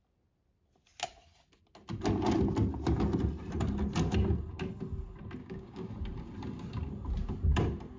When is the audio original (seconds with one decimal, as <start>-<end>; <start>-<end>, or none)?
0.0-5.4; 5.9-8.0